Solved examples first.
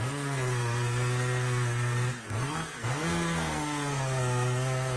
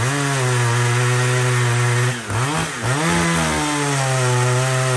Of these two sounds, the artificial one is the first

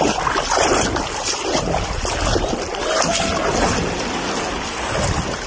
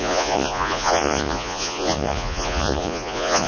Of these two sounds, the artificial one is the second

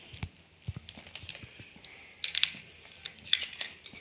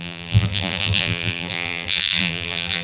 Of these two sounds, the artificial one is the second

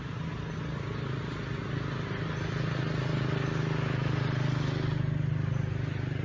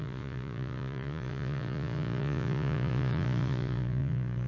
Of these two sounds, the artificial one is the second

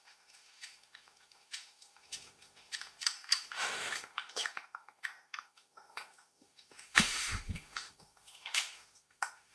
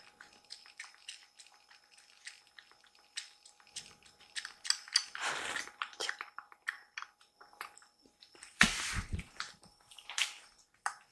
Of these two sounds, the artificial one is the first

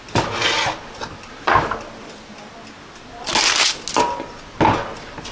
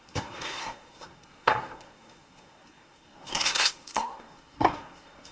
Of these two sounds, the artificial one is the second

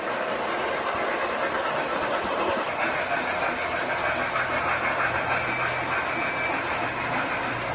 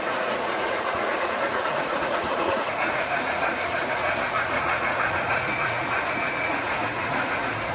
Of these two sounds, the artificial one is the second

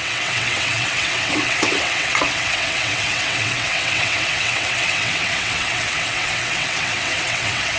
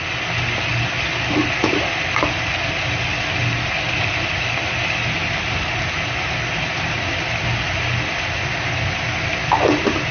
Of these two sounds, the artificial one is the first